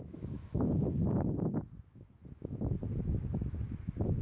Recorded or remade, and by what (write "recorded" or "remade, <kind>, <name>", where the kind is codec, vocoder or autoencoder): remade, autoencoder, DAC-VAE